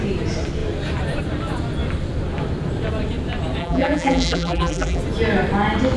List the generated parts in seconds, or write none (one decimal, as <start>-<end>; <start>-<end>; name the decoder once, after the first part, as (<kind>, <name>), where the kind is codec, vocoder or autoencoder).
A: 3.6-5.0 (vocoder, BigVGAN v2)